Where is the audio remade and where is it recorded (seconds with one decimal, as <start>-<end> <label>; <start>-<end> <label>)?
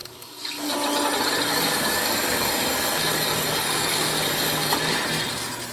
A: 0.0-0.7 remade; 0.7-1.5 recorded; 1.5-4.9 remade; 4.9-5.7 recorded